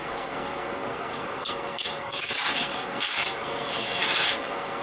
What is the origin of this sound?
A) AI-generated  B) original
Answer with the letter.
A